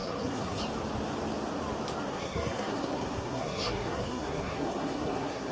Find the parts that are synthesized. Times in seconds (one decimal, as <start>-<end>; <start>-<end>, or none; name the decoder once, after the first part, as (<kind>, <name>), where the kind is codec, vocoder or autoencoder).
0.0-0.6 (codec, SNAC); 2.1-5.5